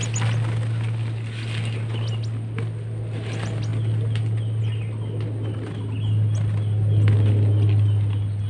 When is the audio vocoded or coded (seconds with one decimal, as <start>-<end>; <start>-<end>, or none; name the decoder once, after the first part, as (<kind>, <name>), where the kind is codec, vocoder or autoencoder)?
none